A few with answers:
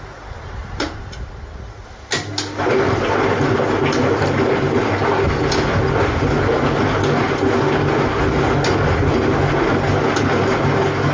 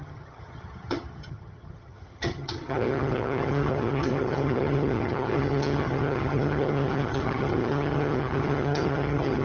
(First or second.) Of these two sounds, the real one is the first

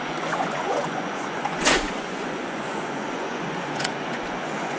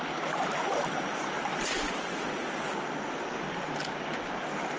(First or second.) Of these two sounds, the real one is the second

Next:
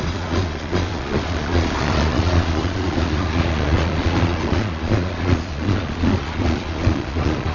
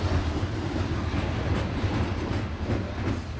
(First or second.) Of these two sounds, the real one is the second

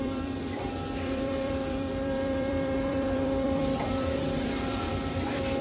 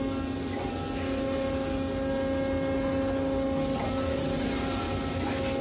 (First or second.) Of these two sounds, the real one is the second